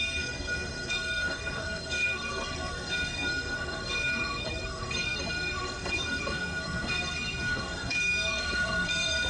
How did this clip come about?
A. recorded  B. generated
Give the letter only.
B